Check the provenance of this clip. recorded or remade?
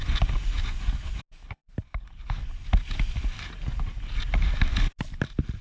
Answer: recorded